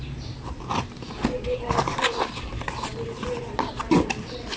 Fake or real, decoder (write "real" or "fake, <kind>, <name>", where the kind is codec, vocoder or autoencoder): real